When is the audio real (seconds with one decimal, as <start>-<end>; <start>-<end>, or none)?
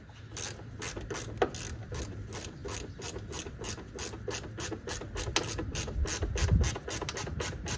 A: 0.0-7.8